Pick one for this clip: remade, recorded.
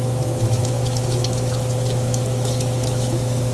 remade